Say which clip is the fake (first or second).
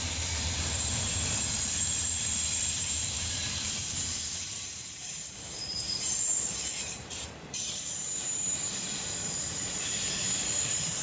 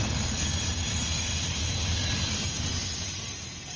first